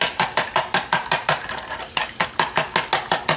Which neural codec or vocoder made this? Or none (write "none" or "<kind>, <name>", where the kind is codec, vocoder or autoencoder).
none